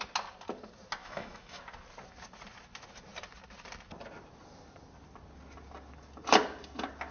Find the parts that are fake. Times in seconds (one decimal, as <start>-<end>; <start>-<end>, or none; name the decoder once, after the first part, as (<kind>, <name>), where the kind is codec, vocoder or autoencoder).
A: 1.0-1.6 (autoencoder, DAC-VAE)